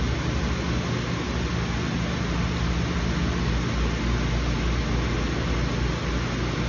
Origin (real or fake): real